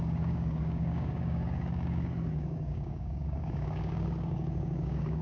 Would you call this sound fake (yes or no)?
yes